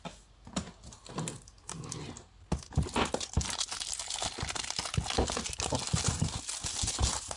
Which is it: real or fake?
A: real